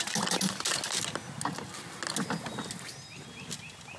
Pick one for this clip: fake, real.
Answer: real